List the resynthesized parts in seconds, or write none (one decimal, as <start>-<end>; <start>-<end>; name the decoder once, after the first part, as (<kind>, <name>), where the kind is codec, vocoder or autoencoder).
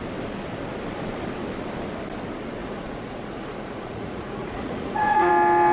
2.6-5.3 (vocoder, Vocos)